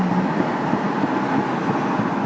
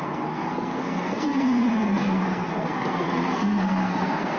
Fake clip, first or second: second